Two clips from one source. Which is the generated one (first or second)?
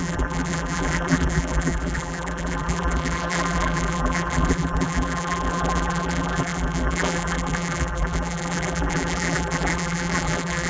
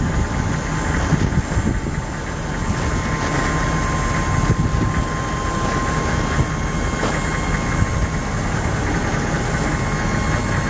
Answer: first